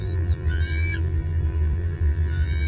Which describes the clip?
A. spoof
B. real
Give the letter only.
A